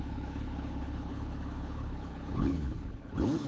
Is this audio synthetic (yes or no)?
yes